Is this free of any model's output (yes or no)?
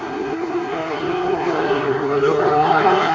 no